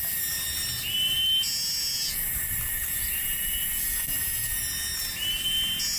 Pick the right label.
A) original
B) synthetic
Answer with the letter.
A